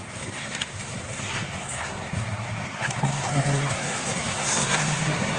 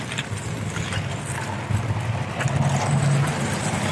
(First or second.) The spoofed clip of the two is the first